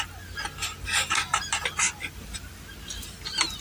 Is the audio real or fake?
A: real